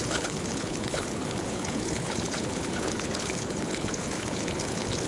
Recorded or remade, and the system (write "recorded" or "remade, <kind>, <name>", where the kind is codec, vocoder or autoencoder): remade, codec, HILCodec